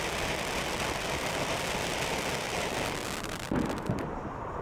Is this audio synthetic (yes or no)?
no